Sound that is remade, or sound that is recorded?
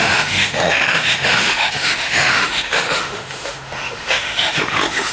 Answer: remade